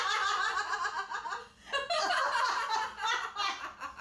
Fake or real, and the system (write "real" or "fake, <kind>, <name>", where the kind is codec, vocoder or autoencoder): real